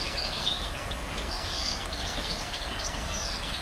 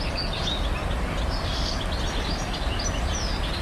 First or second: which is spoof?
first